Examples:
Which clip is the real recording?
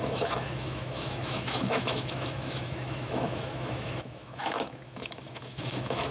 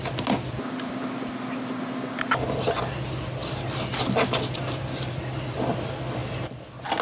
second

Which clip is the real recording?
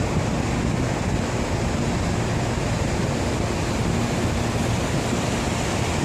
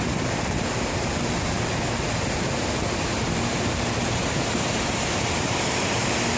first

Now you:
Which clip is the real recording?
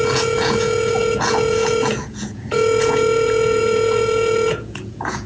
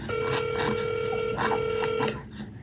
second